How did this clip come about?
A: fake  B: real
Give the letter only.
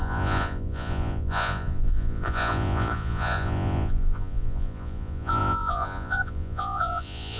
A